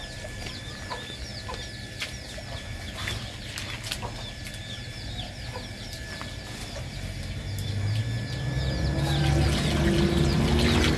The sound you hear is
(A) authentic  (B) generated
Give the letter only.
A